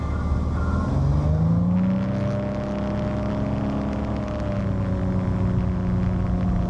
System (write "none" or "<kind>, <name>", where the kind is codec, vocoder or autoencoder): none